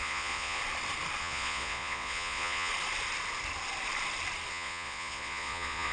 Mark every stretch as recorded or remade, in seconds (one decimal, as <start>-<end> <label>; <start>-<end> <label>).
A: 0.0-0.6 remade; 0.6-1.2 recorded; 1.2-2.7 remade; 2.7-4.5 recorded; 4.5-5.9 remade